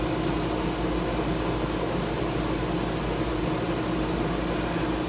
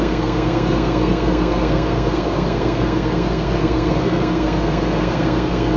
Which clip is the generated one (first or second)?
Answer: second